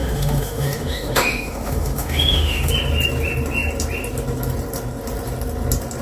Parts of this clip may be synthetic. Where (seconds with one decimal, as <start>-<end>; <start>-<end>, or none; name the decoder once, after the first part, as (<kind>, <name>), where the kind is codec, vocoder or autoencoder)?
0.0-2.7 (autoencoder, DAC-VAE)